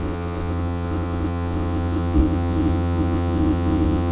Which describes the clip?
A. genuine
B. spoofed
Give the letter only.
B